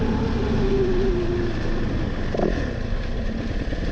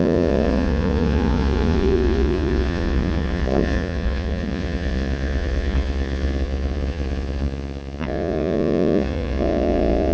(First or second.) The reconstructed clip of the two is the second